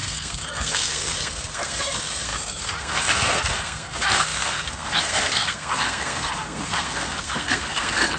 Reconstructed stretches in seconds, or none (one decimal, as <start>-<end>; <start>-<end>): 0.0-8.2